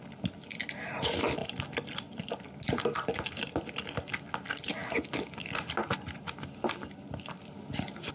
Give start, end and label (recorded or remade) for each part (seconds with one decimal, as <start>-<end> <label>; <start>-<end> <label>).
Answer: 0.0-8.1 recorded